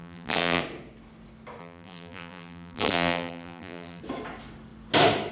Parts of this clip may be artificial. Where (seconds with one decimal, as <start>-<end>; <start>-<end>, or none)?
0.0-0.6; 1.6-4.0